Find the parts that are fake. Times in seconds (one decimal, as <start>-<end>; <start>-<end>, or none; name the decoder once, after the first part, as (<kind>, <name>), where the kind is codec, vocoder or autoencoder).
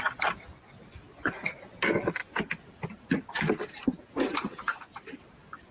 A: none